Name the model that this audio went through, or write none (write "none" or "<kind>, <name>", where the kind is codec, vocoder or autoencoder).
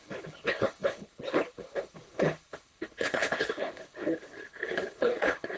codec, HILCodec